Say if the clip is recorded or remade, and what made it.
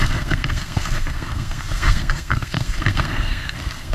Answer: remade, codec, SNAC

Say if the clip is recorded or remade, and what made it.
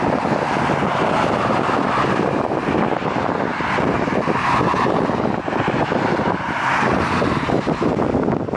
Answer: recorded